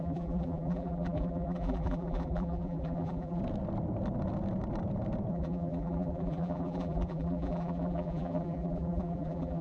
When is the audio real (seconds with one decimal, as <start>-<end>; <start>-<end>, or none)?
3.4-5.3